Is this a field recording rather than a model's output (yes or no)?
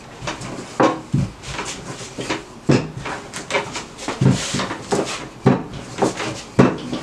yes